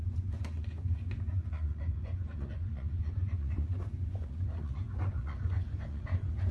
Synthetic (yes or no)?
yes